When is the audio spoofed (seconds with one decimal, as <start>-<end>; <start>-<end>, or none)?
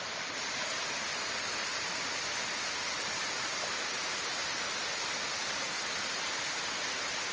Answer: 0.0-1.1; 4.0-4.8